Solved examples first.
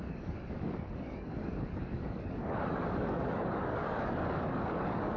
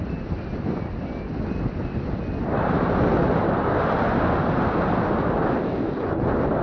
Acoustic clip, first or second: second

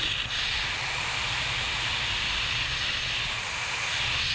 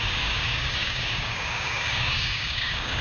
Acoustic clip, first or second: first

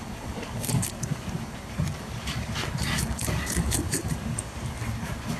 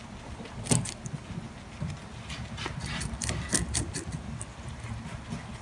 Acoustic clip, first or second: second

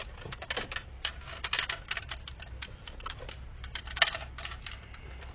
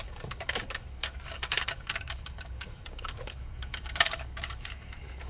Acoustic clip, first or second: first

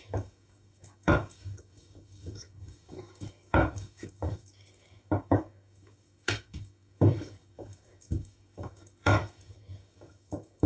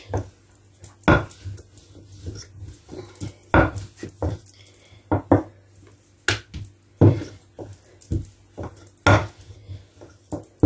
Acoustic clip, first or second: second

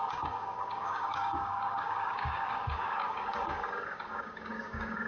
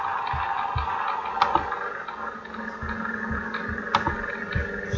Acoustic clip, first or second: second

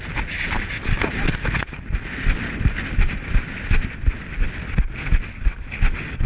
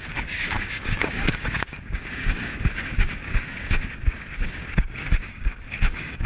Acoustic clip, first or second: first